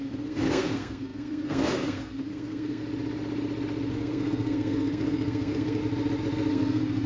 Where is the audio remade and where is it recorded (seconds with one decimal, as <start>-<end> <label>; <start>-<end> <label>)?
0.0-2.8 remade; 2.8-3.9 recorded; 3.9-5.8 remade; 5.8-6.5 recorded; 6.5-7.1 remade